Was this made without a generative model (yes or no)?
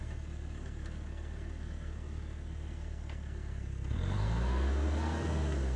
no